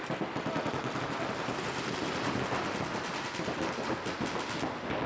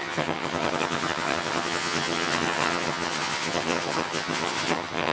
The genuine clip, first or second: first